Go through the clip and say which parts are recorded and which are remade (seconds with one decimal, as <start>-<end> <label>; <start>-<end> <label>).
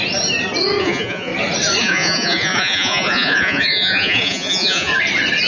0.0-0.8 recorded; 0.8-1.3 remade; 1.3-1.8 recorded; 1.8-4.9 remade; 4.9-5.5 recorded